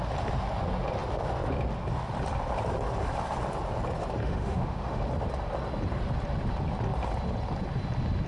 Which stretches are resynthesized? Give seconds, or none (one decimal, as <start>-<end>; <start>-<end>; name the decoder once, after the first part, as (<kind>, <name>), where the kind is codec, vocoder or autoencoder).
4.2-5.0 (autoencoder, DAC-VAE)